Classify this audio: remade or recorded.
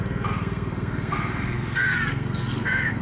remade